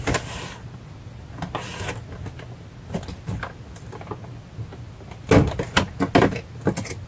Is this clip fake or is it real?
real